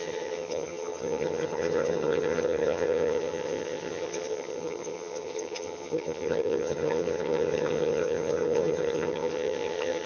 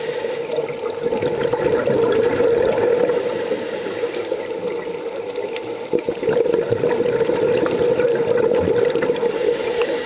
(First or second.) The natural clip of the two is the second